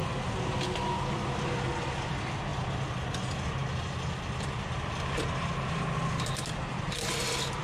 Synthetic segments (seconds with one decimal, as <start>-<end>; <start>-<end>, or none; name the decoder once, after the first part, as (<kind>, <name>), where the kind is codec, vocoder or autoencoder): none